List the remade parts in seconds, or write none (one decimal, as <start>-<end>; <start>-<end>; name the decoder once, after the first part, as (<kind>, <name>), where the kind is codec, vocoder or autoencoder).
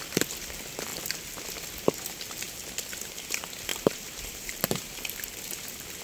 3.7-5.0 (vocoder, BigVGAN v2)